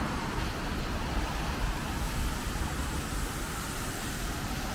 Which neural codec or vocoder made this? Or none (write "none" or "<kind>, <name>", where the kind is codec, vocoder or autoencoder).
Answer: none